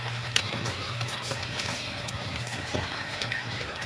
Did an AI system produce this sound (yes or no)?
yes